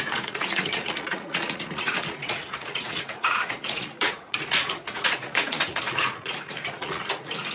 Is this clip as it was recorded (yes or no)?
no